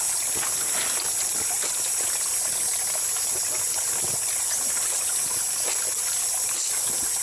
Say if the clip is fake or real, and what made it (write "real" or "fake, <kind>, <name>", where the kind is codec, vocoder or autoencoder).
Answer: real